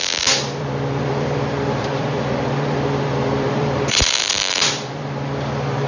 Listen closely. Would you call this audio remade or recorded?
remade